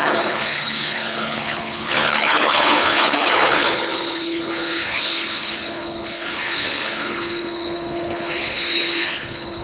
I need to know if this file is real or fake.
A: fake